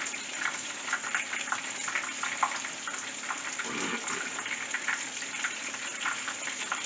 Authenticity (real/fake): fake